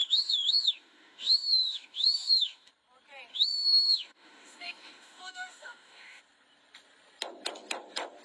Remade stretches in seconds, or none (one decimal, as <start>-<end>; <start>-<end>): 0.0-2.7; 3.3-6.2